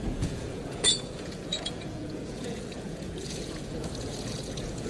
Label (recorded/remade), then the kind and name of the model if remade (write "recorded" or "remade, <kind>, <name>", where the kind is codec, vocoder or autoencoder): remade, vocoder, Vocos